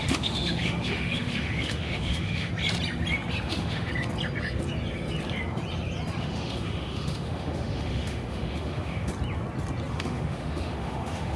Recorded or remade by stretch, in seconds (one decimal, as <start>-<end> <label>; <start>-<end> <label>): 0.0-2.5 remade; 2.5-3.4 recorded; 3.4-3.9 remade; 3.9-6.2 recorded; 6.2-9.1 remade; 9.1-9.9 recorded; 9.9-11.4 remade